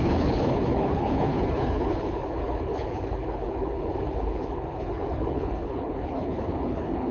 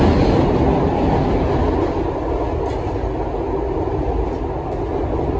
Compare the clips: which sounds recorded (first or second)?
second